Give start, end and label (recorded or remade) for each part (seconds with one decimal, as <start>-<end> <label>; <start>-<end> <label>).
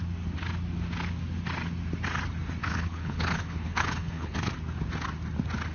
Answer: 0.0-2.6 recorded; 2.6-4.5 remade; 4.5-5.7 recorded